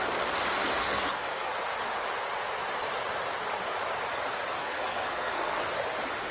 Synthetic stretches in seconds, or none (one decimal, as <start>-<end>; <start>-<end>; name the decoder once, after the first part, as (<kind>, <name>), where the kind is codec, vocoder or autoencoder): 0.8-1.5 (codec, SNAC); 4.6-5.6

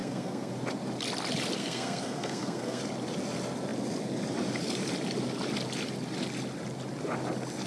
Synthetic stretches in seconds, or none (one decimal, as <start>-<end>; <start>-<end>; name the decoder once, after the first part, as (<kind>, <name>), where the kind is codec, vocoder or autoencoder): 0.0-0.5 (codec, SNAC); 1.6-2.8

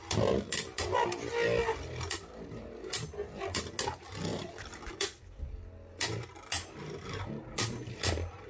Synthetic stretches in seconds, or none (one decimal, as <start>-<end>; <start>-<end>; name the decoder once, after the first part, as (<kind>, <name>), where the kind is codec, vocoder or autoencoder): none

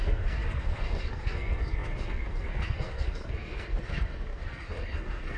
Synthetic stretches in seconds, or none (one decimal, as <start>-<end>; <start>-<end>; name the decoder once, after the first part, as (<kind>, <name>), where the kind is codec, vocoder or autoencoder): 0.0-5.4 (codec, SNAC)

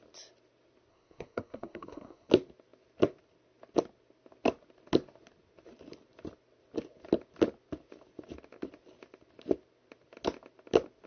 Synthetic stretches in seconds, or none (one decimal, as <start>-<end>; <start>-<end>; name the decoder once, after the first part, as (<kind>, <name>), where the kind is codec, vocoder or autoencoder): 0.9-2.3 (codec, SNAC)

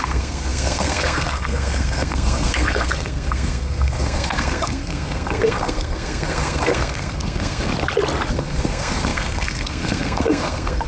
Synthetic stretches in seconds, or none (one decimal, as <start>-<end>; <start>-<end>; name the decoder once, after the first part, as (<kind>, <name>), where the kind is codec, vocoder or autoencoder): 0.0-7.7 (codec, SNAC); 8.3-10.9

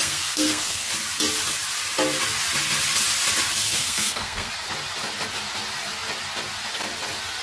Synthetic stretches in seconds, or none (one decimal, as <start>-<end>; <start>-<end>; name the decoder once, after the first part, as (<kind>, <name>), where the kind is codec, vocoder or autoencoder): 0.0-0.9 (codec, SNAC); 3.7-4.5

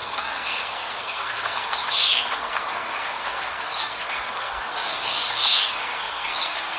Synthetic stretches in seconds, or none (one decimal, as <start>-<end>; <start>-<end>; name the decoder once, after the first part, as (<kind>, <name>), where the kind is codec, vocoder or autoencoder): 0.0-6.8 (codec, SNAC)